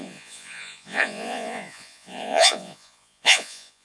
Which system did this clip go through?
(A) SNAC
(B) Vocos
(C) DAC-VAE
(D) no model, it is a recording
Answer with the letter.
B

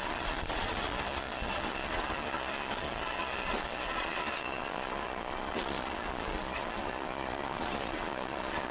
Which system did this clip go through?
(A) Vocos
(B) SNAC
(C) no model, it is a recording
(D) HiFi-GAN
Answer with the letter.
A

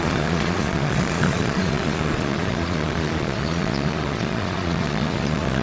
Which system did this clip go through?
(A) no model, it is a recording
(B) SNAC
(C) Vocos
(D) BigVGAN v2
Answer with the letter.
C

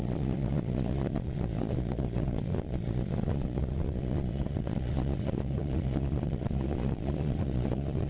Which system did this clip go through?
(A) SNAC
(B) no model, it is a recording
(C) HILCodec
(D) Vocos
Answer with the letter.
D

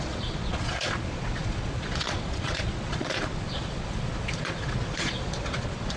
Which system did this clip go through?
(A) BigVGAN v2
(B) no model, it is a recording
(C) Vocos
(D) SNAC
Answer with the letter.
C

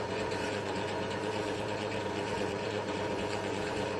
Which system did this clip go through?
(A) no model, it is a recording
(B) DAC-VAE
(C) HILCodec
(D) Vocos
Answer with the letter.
D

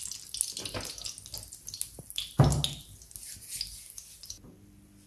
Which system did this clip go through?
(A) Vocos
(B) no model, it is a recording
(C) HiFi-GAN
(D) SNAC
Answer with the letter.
B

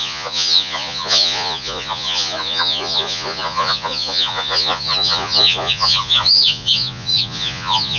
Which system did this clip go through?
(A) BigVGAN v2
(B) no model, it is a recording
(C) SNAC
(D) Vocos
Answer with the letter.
D